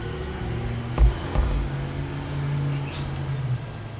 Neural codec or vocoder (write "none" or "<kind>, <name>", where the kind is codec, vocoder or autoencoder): none